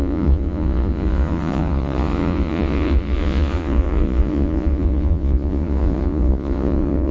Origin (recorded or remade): remade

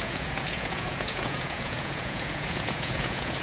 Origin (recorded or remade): remade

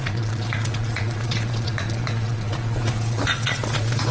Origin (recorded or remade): remade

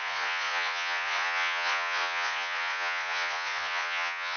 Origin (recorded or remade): remade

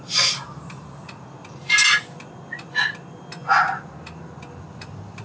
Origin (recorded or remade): recorded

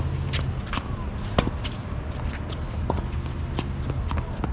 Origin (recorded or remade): recorded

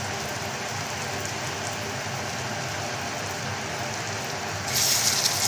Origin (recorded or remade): recorded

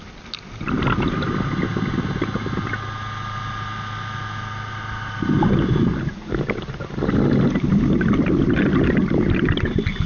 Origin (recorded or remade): recorded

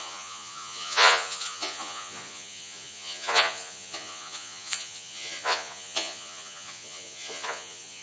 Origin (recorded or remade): remade